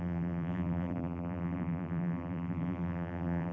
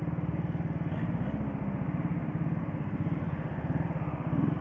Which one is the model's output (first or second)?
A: first